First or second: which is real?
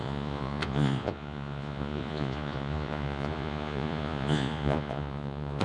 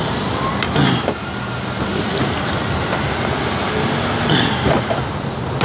second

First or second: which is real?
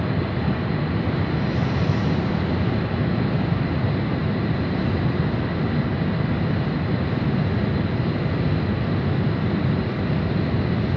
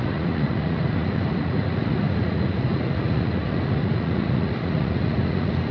first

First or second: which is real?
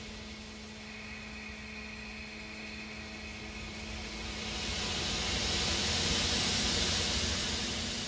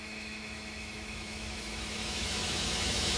first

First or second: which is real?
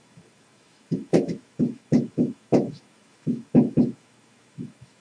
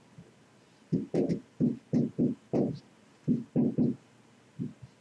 second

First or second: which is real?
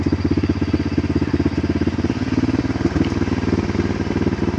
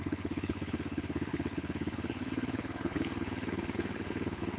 first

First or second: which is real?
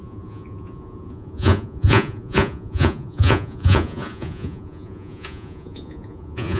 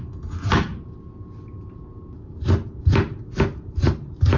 second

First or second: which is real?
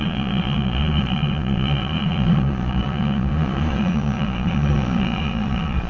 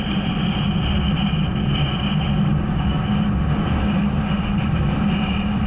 second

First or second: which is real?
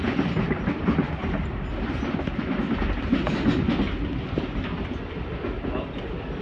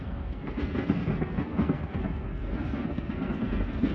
first